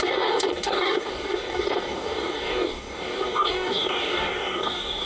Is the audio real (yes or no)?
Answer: no